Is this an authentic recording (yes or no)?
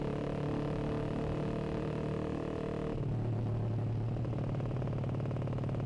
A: yes